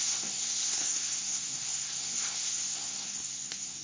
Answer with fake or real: fake